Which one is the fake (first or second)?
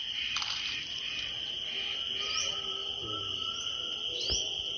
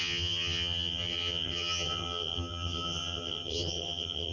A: second